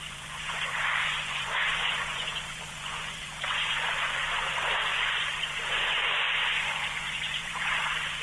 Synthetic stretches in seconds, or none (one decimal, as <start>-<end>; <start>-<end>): 0.0-8.2